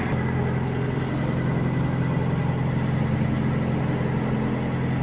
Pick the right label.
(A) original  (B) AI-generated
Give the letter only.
A